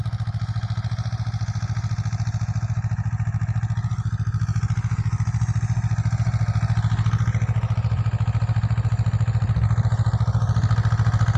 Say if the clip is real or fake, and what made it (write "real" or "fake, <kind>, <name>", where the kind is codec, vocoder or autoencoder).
real